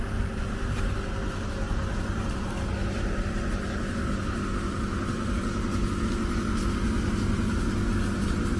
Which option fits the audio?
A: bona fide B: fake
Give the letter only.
A